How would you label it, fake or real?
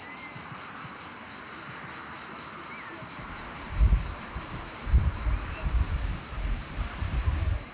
real